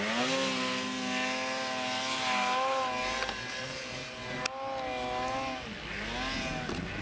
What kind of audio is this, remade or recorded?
recorded